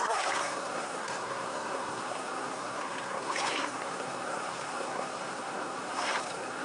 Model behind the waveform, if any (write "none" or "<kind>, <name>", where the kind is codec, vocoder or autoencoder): codec, SNAC